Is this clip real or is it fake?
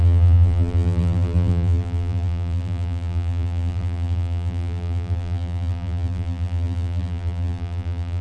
fake